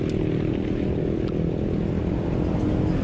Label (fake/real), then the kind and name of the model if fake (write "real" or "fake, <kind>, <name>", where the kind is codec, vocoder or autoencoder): real